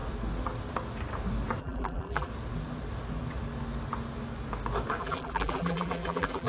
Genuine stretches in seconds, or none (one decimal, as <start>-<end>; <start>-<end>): 0.0-1.6; 2.3-5.0